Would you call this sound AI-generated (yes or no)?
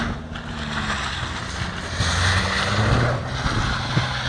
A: no